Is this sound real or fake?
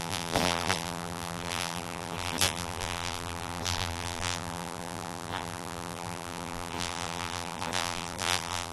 fake